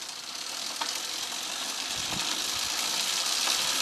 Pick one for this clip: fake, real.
real